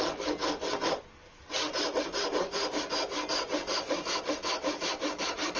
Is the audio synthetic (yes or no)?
no